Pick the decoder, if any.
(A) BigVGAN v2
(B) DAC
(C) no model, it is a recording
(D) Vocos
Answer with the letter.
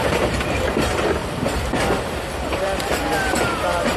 A